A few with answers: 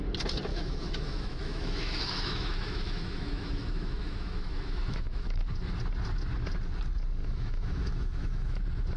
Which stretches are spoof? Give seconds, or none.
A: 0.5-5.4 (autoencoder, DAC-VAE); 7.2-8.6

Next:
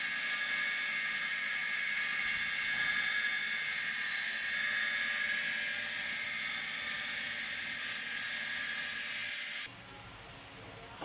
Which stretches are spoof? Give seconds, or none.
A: none